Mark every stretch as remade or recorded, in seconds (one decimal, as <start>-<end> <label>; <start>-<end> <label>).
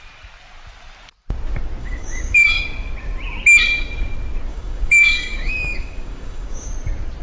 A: 0.0-1.8 recorded; 1.8-2.6 remade; 2.6-4.5 recorded; 4.5-6.7 remade; 6.7-7.2 recorded